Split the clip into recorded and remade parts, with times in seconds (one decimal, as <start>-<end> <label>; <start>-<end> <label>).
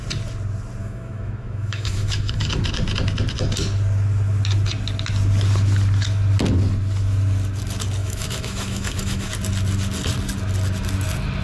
0.0-0.8 recorded; 0.8-2.5 remade; 2.5-8.0 recorded; 8.0-9.3 remade; 9.3-11.4 recorded